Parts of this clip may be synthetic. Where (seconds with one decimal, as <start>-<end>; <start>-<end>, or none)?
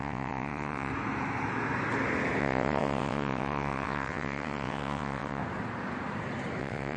0.0-0.9; 2.4-5.4; 6.6-7.0